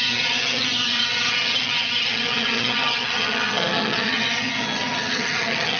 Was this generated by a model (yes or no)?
yes